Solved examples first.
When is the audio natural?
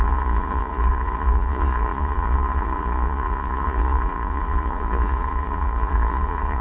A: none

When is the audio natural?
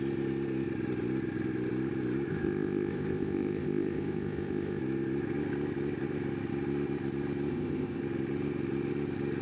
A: 0.0-2.3; 4.8-7.5; 8.0-9.4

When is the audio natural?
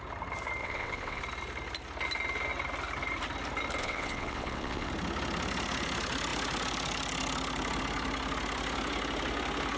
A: 0.0-0.6; 1.2-3.8; 4.9-9.8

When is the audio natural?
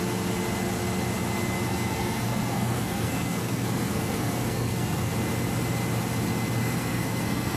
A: 0.0-1.7; 5.1-6.6